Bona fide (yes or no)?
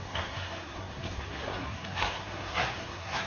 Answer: no